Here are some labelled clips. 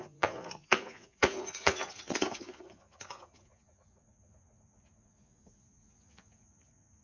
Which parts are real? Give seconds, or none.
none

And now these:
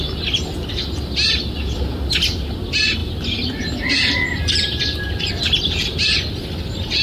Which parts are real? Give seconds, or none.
0.0-3.0; 5.3-7.0

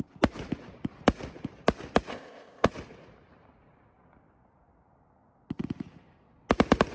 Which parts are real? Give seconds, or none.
0.0-2.1; 2.7-6.9